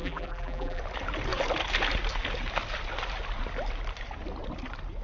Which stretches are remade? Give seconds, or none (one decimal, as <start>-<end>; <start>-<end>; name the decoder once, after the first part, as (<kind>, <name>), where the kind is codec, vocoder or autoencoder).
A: 0.0-0.8 (vocoder, BigVGAN v2)

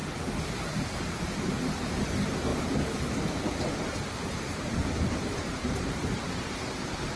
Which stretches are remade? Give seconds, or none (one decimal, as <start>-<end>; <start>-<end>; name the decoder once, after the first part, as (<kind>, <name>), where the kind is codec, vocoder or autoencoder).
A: 2.5-6.4 (vocoder, BigVGAN v2)

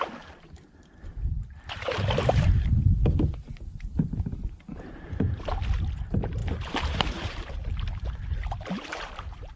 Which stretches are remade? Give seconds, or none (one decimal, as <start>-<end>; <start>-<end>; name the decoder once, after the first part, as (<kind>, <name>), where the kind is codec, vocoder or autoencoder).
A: 2.2-3.5 (vocoder, BigVGAN v2); 6.4-8.1; 8.9-9.6